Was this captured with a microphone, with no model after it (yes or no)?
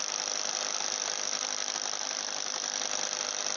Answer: yes